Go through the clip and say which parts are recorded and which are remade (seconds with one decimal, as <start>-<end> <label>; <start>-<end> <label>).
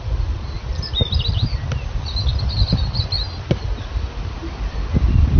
0.0-5.4 recorded